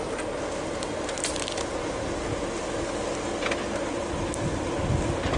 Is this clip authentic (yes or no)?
yes